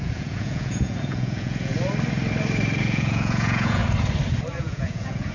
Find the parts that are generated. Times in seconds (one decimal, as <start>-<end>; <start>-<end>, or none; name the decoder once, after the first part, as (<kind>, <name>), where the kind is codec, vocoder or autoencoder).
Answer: 0.0-1.7 (vocoder, Vocos); 2.8-3.8; 4.6-5.3